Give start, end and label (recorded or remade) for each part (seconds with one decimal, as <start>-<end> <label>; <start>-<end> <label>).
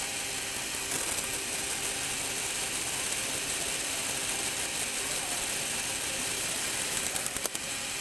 0.0-8.0 recorded